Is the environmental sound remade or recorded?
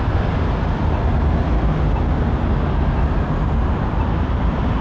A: recorded